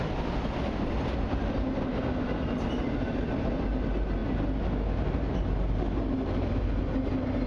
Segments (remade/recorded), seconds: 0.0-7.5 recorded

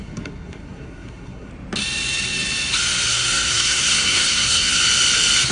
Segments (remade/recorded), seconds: 0.0-1.5 remade; 1.5-3.1 recorded; 3.1-4.8 remade; 4.8-5.5 recorded

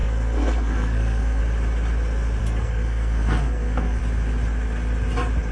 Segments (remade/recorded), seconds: 0.0-1.4 remade; 1.4-2.4 recorded; 2.4-4.0 remade; 4.0-5.5 recorded

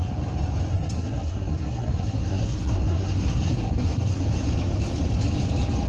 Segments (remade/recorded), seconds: 0.0-0.7 recorded; 0.7-4.2 remade; 4.2-5.9 recorded

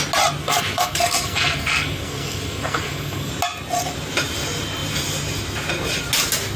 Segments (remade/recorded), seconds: 0.0-0.4 recorded; 0.4-3.3 remade; 3.3-6.6 recorded

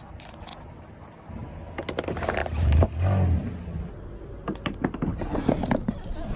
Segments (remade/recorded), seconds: 0.0-6.4 recorded

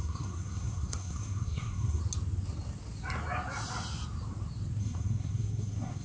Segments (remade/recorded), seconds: 0.0-2.0 remade; 2.0-4.8 recorded; 4.8-6.0 remade